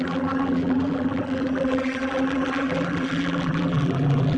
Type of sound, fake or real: fake